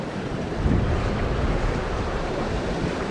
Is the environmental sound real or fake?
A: fake